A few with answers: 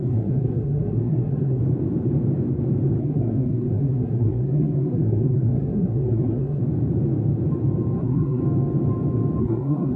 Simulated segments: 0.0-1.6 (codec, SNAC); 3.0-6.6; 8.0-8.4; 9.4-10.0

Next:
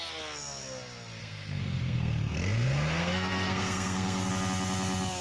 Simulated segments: 1.2-4.3 (codec, SNAC)

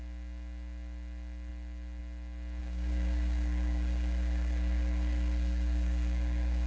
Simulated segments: 2.6-6.7 (codec, SNAC)

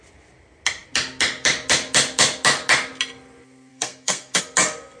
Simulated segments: 3.7-4.4 (codec, SNAC)